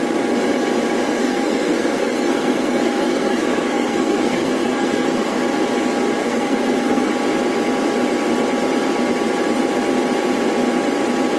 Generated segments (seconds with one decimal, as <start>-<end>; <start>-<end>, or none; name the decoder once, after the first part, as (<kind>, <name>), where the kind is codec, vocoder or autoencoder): 1.2-5.4 (codec, SNAC); 6.2-7.1